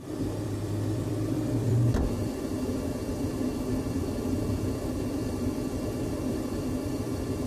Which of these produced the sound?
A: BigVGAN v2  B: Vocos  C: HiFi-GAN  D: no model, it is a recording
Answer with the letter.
A